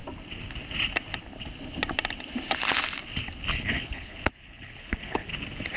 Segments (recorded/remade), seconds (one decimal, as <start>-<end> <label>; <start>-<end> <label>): 0.0-3.5 recorded; 3.5-5.3 remade; 5.3-5.8 recorded